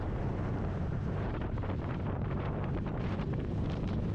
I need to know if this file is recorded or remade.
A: remade